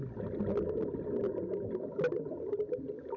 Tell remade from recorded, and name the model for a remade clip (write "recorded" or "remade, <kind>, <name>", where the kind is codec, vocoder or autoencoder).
recorded